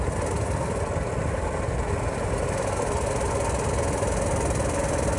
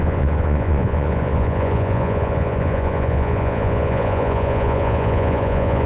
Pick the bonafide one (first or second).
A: first